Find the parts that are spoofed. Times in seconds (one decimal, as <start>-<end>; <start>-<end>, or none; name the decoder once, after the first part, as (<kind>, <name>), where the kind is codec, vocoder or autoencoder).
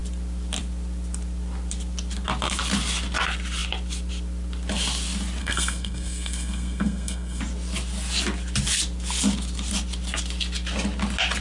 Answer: 5.4-7.4 (codec, SNAC)